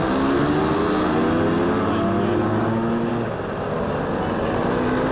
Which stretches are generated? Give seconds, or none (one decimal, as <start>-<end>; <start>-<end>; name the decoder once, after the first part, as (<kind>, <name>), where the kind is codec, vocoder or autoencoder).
none